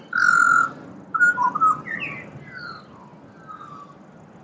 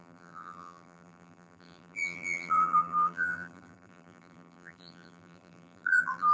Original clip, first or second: first